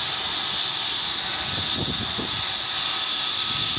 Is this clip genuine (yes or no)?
yes